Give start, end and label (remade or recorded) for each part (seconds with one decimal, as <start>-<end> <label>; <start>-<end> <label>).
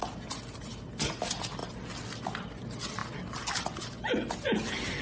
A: 0.0-1.6 recorded; 1.6-2.6 remade; 2.6-3.0 recorded; 3.0-3.8 remade; 3.8-5.0 recorded